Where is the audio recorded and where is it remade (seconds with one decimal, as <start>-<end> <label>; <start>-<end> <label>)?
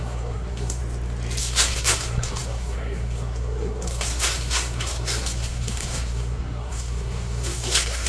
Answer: 0.0-0.8 remade; 0.8-1.4 recorded; 1.4-8.1 remade